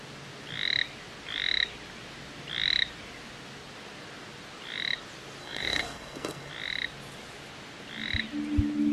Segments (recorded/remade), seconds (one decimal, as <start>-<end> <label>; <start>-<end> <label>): 0.0-5.4 recorded; 5.4-6.5 remade; 6.5-8.9 recorded